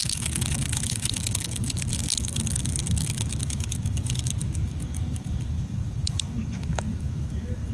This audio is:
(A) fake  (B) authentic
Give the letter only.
A